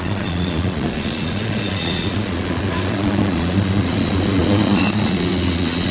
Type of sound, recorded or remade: remade